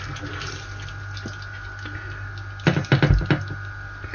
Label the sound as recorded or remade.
recorded